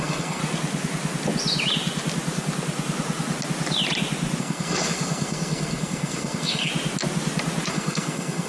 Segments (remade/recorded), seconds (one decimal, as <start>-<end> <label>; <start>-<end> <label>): 0.0-0.4 remade; 0.4-4.4 recorded; 4.4-6.7 remade; 6.7-7.7 recorded; 7.7-8.5 remade